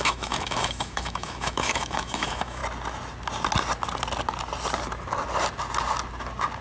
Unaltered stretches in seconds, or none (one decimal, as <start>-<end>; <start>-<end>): 2.6-6.6